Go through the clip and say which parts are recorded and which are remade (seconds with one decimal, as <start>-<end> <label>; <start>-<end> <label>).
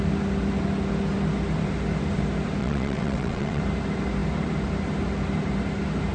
0.0-2.6 recorded; 2.6-3.6 remade; 3.6-6.1 recorded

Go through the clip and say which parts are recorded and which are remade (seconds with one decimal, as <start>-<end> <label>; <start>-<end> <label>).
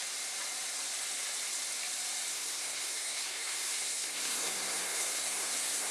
0.0-2.3 recorded; 2.3-5.9 remade